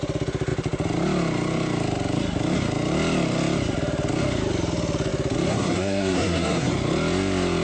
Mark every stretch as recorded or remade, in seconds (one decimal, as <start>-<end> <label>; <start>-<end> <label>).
0.0-5.5 recorded; 5.5-6.7 remade; 6.7-7.6 recorded